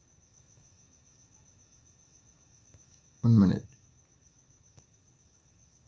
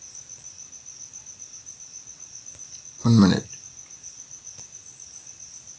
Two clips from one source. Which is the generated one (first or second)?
first